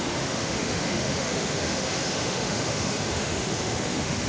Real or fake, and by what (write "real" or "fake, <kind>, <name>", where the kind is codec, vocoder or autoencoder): fake, autoencoder, DAC-VAE